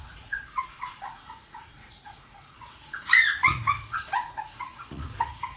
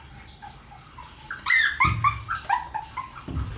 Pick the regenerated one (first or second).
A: first